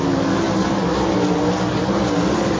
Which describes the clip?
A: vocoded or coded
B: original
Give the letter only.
B